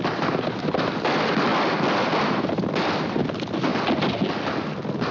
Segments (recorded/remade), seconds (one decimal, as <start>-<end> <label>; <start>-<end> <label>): 0.0-5.1 recorded